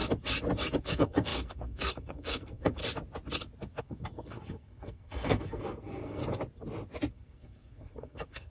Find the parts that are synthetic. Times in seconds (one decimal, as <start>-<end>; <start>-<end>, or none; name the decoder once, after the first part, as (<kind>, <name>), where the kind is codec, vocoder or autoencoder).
0.8-2.8 (codec, SNAC); 3.8-6.2; 7.1-8.5